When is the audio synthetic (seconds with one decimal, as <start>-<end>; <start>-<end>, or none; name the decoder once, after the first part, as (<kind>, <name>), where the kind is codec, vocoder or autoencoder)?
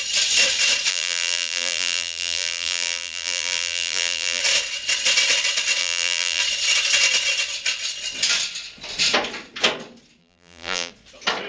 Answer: 0.9-4.4 (vocoder, BigVGAN v2); 5.8-6.4; 10.2-10.9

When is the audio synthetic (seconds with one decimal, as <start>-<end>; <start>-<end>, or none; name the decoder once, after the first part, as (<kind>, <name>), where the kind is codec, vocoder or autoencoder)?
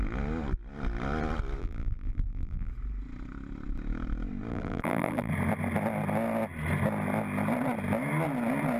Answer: 1.6-2.7 (vocoder, BigVGAN v2); 4.5-5.3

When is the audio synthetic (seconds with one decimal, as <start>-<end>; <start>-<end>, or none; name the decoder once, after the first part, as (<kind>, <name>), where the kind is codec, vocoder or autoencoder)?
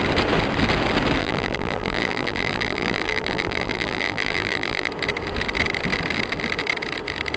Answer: 1.2-4.9 (vocoder, BigVGAN v2)